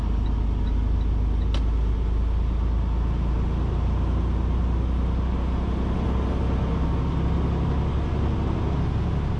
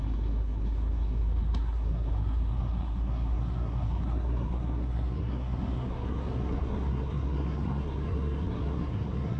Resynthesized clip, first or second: second